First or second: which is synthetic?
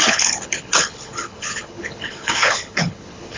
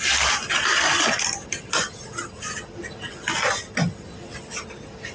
first